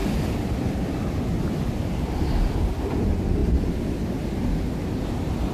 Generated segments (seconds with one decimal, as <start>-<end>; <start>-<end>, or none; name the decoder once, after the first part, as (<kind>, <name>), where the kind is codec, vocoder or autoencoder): 3.4-4.1 (vocoder, BigVGAN v2)